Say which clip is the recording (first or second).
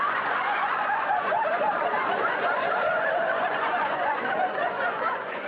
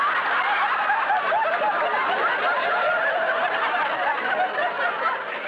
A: second